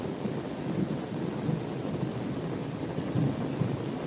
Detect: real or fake real